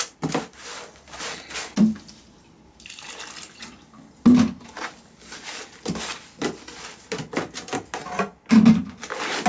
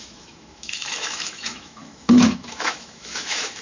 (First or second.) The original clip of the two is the first